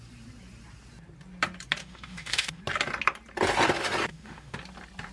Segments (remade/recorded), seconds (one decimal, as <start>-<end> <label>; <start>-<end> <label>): 0.0-1.8 recorded; 1.8-2.6 remade; 2.6-4.1 recorded; 4.1-4.6 remade; 4.6-5.1 recorded